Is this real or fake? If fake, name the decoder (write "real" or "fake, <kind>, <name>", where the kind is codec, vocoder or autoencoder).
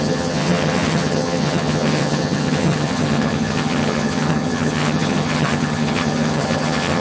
fake, vocoder, HiFi-GAN